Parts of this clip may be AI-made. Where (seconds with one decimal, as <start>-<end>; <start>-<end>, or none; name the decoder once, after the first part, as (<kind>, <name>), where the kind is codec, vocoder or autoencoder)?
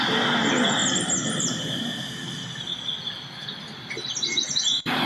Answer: none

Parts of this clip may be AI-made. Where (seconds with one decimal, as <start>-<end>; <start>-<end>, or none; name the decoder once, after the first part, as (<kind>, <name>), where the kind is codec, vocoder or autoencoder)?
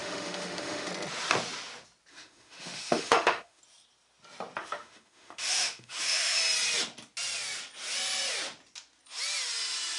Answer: 0.0-0.9 (autoencoder, DAC-VAE); 2.1-3.6; 4.6-6.4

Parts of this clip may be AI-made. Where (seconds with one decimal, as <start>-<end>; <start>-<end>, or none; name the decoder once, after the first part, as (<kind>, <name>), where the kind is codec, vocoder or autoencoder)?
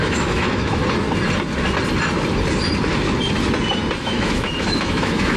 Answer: 0.0-0.8 (autoencoder, DAC-VAE); 4.0-5.4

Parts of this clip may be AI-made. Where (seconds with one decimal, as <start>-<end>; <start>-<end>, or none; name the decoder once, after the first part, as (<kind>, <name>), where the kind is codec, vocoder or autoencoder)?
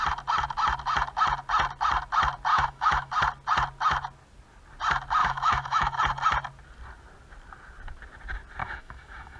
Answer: 2.5-3.1 (autoencoder, DAC-VAE); 5.2-6.0; 8.6-9.4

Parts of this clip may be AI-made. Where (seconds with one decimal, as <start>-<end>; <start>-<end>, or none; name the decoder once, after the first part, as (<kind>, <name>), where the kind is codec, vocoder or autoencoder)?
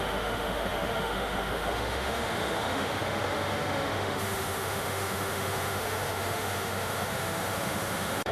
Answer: 0.0-8.3 (autoencoder, DAC-VAE)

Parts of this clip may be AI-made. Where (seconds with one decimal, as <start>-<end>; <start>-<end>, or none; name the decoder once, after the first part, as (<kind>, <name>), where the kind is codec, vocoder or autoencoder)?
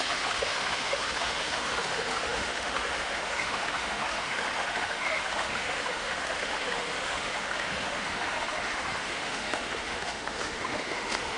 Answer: 0.0-11.4 (autoencoder, DAC-VAE)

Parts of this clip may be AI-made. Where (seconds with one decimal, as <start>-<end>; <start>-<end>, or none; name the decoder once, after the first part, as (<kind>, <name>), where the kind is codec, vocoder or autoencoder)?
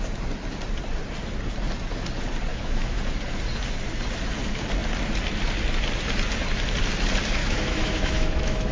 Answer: 2.5-3.0 (autoencoder, DAC-VAE); 7.4-8.7